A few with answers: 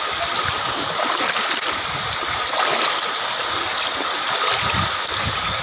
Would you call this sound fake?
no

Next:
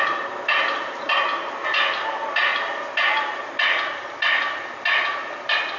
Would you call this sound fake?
no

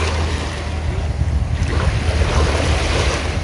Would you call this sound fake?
no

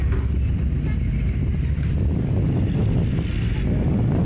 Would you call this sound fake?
no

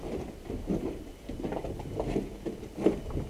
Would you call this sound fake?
no